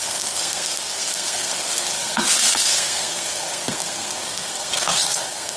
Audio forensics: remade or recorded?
remade